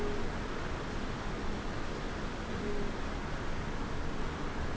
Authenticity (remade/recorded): recorded